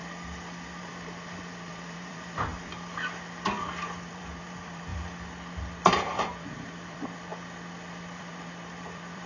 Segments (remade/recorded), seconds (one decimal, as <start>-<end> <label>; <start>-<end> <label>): 0.0-0.8 recorded; 0.8-2.5 remade; 2.5-4.1 recorded; 4.1-4.9 remade; 4.9-5.9 recorded; 5.9-7.3 remade; 7.3-7.9 recorded; 7.9-9.3 remade